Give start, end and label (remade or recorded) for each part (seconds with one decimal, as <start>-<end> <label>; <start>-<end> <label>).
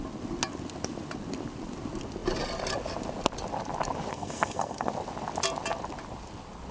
0.0-4.1 recorded; 4.1-4.9 remade; 4.9-6.7 recorded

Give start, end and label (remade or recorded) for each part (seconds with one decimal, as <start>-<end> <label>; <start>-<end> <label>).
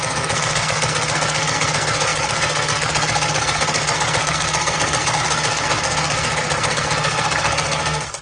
0.0-8.2 remade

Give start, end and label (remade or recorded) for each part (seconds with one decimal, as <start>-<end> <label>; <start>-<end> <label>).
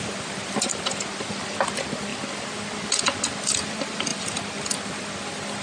0.0-5.6 recorded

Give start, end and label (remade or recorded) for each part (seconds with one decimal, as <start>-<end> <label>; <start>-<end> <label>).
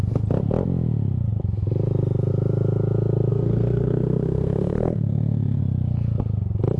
0.0-3.3 recorded; 3.3-5.6 remade; 5.6-6.8 recorded